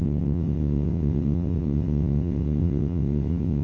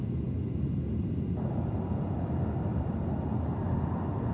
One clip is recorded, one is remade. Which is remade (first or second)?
first